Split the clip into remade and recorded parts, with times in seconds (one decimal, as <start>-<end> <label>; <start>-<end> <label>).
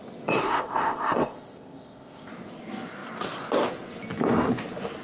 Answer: 0.0-0.4 recorded; 0.4-2.3 remade; 2.3-5.0 recorded